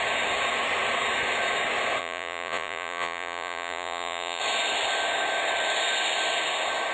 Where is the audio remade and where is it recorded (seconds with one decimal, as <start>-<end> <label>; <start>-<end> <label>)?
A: 0.0-2.0 recorded; 2.0-4.4 remade; 4.4-6.9 recorded